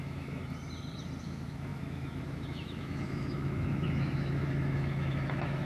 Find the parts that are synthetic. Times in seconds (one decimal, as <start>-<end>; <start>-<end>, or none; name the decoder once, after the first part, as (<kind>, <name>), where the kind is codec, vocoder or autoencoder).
0.0-0.4 (autoencoder, DAC-VAE); 1.2-5.7